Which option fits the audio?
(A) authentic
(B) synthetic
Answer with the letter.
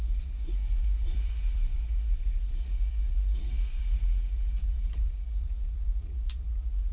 B